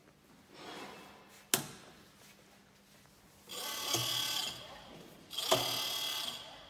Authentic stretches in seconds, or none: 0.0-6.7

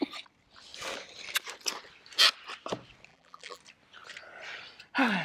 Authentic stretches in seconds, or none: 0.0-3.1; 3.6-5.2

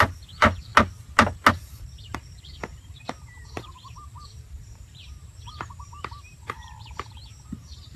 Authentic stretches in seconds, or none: 0.7-1.5

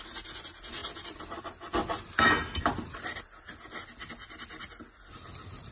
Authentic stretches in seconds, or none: 0.0-0.8; 1.4-2.4; 3.1-5.7

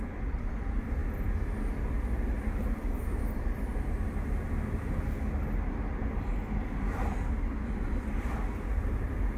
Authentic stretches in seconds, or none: 1.0-3.3; 3.7-8.7